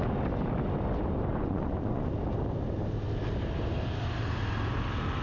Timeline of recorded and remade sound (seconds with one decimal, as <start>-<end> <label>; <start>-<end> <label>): 0.0-1.3 recorded; 1.3-2.1 remade; 2.1-5.2 recorded